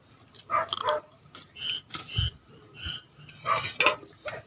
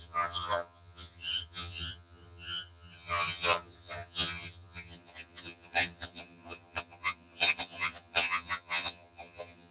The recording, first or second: first